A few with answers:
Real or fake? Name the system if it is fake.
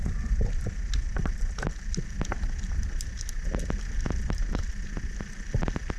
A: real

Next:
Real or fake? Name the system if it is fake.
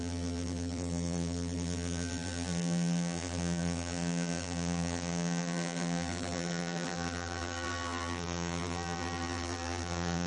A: fake, vocoder, BigVGAN v2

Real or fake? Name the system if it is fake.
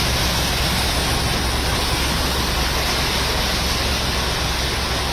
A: real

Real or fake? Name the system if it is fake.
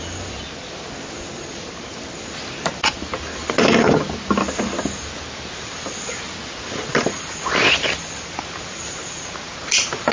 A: real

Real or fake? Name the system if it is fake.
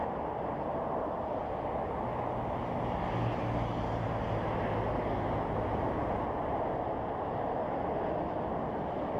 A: real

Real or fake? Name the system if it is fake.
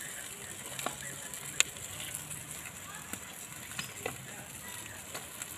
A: real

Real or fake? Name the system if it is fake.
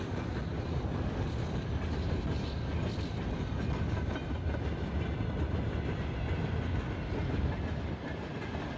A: real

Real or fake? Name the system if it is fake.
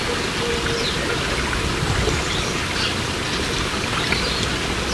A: real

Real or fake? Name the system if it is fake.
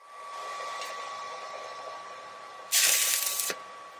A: fake, vocoder, BigVGAN v2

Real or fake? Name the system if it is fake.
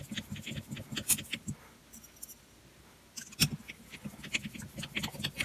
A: real